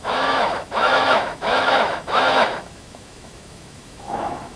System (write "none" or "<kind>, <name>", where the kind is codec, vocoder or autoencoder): autoencoder, DAC-VAE